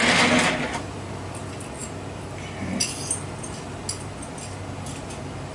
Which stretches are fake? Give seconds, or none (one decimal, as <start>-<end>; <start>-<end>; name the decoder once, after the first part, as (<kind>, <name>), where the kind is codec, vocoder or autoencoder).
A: none